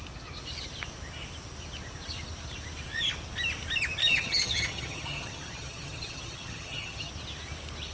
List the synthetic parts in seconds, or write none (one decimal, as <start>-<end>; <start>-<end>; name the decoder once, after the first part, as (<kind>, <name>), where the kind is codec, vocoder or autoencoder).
4.0-7.1 (vocoder, HiFi-GAN)